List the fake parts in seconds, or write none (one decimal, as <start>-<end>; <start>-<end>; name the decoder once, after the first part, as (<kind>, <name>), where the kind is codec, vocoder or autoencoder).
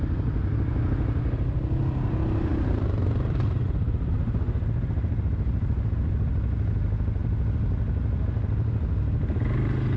2.5-4.4 (vocoder, BigVGAN v2)